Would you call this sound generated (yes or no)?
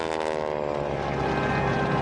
no